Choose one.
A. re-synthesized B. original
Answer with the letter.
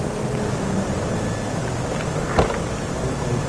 B